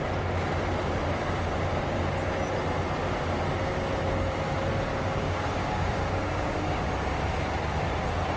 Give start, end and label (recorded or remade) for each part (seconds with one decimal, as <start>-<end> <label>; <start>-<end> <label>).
0.0-4.9 recorded; 4.9-6.8 remade; 6.8-8.4 recorded